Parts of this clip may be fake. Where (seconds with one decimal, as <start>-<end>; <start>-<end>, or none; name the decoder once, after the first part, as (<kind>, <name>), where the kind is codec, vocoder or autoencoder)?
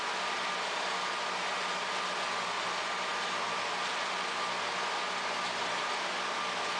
none